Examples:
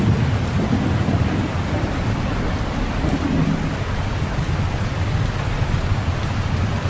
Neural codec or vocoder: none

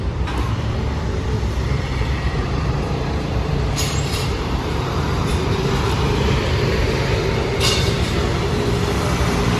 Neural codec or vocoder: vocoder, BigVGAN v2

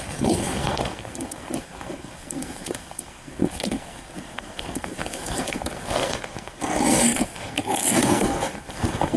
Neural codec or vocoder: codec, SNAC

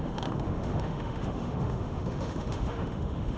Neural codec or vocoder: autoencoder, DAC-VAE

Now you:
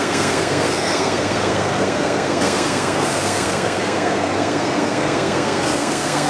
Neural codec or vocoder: codec, SNAC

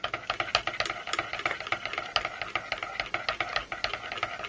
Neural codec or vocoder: none